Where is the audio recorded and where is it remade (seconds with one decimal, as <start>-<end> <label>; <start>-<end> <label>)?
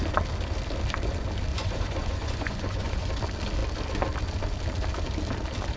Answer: 0.0-1.5 recorded; 1.5-3.1 remade; 3.1-5.8 recorded